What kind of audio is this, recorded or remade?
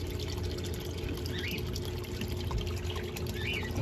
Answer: recorded